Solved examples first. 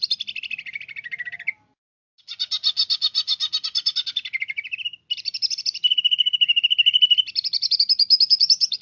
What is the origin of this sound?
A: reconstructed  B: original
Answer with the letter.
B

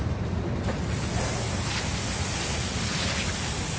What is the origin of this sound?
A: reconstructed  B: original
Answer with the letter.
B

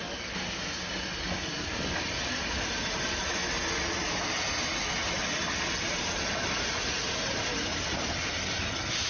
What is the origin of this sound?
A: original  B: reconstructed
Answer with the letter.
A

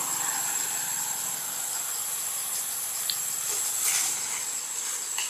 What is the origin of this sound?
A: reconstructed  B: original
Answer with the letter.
B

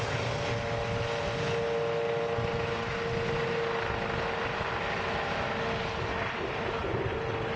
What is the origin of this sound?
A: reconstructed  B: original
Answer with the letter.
B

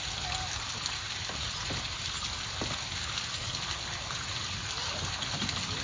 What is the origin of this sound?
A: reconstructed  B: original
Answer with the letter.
B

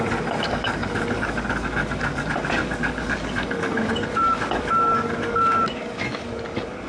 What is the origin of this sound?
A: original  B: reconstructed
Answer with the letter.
B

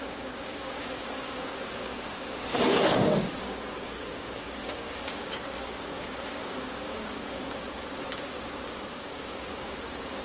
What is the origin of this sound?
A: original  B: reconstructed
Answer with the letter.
B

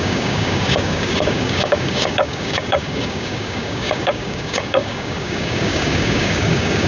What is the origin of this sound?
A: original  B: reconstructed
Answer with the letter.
B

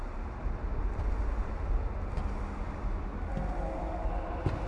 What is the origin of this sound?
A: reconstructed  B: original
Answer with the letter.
B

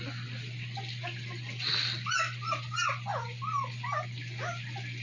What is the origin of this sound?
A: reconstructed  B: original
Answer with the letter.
B